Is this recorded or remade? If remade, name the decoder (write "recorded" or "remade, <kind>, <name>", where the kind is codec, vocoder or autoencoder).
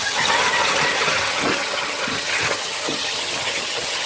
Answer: remade, vocoder, HiFi-GAN